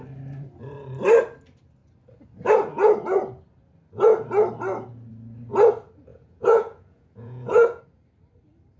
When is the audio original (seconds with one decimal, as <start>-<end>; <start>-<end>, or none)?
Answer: 0.0-6.1; 7.8-8.8